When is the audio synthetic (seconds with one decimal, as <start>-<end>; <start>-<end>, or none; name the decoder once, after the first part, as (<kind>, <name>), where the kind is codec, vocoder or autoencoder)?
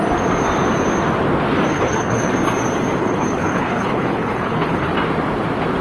1.7-2.3 (codec, HILCodec); 3.0-4.9